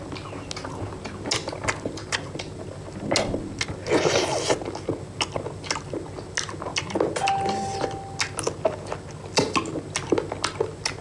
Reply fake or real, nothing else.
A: real